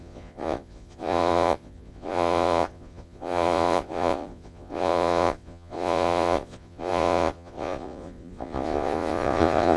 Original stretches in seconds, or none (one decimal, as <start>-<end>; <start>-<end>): none